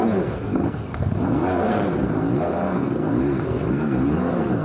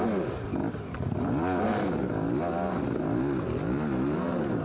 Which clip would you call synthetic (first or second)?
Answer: first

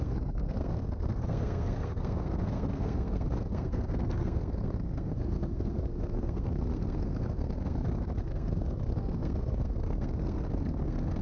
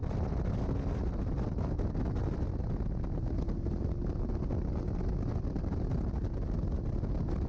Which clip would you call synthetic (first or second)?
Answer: first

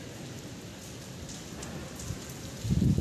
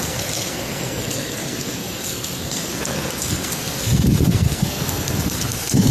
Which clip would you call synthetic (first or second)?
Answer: second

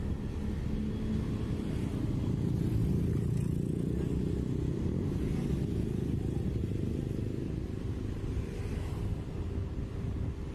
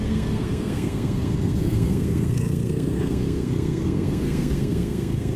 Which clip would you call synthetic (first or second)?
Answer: second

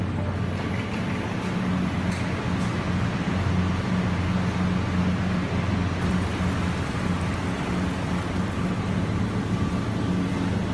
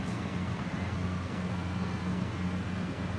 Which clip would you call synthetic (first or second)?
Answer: second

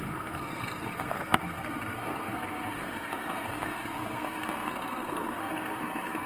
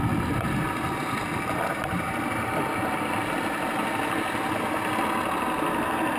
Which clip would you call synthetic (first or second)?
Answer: first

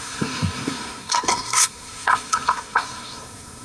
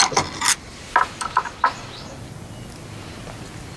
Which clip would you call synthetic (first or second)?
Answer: first